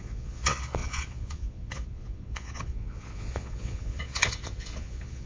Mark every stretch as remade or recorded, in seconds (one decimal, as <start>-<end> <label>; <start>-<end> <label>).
0.0-5.3 remade